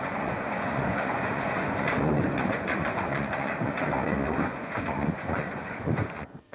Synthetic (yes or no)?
yes